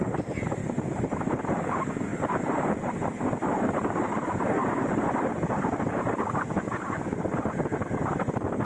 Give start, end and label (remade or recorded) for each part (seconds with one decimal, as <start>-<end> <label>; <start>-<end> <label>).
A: 0.0-0.6 recorded; 0.6-1.4 remade; 1.4-2.1 recorded; 2.1-4.1 remade; 4.1-4.6 recorded; 4.6-7.4 remade; 7.4-8.6 recorded

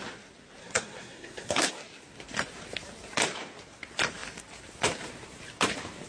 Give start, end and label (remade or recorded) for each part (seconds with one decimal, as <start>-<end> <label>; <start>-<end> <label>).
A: 0.0-0.6 recorded; 0.6-1.7 remade; 1.7-6.1 recorded